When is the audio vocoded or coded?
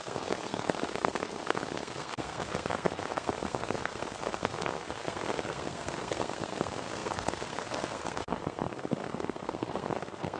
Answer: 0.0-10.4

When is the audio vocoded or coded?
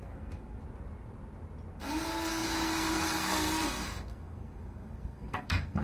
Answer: 0.0-0.6; 1.7-5.8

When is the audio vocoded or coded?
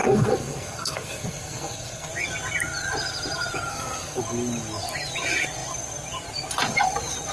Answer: 0.0-2.1; 3.7-4.2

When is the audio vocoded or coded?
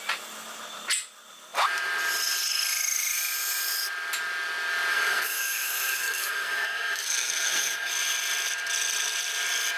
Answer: 4.9-7.9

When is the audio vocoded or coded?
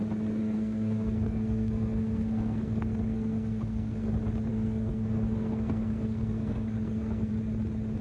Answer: 0.4-4.1; 4.5-7.3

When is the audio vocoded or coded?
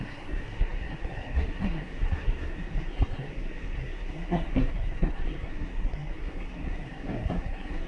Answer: 0.0-7.9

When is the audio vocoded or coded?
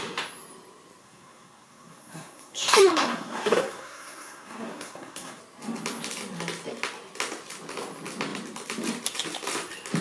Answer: 1.0-5.4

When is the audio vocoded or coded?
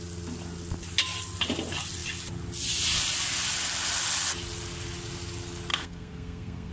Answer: 5.7-6.7